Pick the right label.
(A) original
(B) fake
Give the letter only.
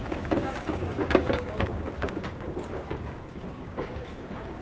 B